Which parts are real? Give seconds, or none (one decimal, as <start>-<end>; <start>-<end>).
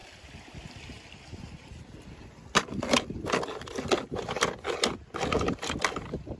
0.0-6.4